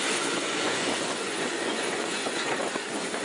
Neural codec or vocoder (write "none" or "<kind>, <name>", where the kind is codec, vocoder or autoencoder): vocoder, Vocos